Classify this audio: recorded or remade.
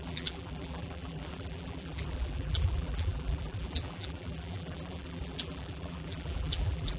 remade